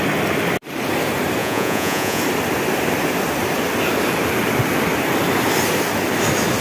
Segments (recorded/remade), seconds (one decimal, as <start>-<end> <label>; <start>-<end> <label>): 0.0-1.4 recorded; 1.4-2.2 remade; 2.2-6.6 recorded